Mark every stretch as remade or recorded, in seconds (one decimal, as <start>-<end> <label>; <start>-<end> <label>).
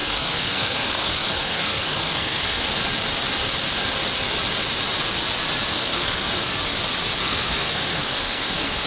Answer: 0.0-2.7 remade; 2.7-5.7 recorded; 5.7-6.5 remade; 6.5-7.2 recorded; 7.2-8.9 remade